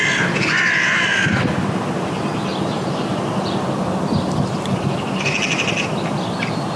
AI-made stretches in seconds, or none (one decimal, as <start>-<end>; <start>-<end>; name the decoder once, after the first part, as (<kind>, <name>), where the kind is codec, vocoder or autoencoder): 0.0-6.8 (vocoder, BigVGAN v2)